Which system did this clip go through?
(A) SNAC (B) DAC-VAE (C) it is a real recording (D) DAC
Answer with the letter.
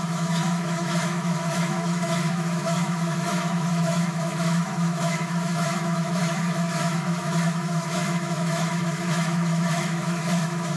B